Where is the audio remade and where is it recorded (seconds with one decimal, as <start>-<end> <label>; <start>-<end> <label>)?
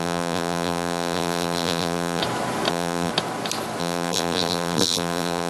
0.0-2.2 remade; 2.2-2.7 recorded; 2.7-3.1 remade; 3.1-3.8 recorded; 3.8-5.5 remade